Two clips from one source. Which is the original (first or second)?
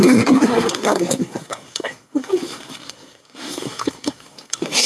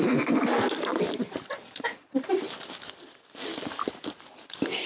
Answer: second